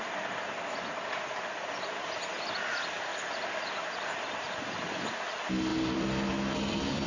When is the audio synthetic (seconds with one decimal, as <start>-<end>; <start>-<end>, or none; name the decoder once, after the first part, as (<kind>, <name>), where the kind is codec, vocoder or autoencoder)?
3.1-5.1 (vocoder, BigVGAN v2); 5.7-7.1